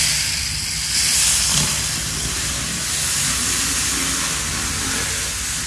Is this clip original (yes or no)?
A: yes